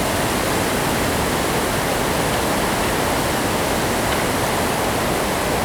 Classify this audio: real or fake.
real